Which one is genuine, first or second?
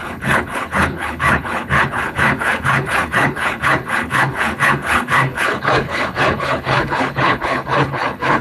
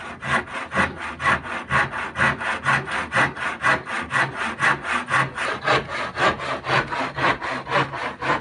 second